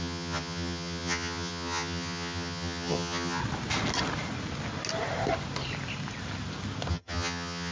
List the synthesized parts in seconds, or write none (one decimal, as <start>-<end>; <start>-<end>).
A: 0.0-3.4; 6.9-7.7